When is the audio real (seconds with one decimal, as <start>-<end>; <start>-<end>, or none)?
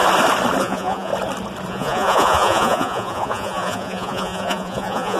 0.0-0.6; 1.1-1.7